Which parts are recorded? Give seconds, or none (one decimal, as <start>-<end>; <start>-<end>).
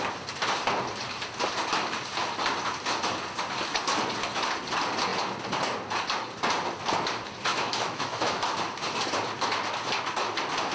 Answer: 0.0-7.5; 8.4-10.7